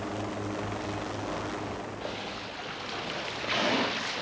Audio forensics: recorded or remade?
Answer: recorded